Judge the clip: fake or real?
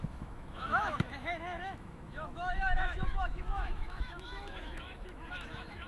fake